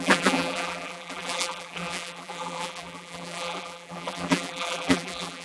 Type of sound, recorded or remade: remade